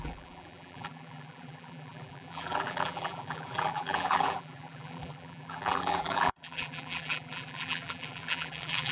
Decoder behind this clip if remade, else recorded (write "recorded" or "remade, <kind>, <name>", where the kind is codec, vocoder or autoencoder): remade, vocoder, BigVGAN v2